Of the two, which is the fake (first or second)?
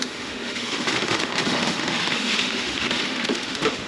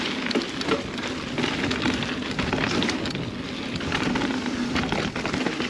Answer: first